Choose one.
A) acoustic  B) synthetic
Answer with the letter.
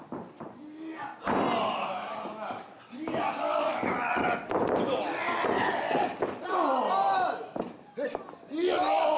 A